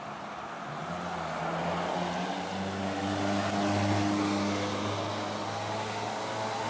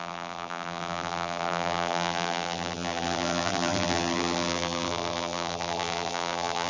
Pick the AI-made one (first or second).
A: second